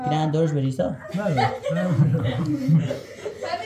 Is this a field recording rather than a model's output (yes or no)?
yes